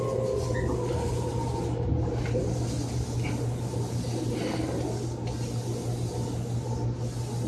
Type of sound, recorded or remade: recorded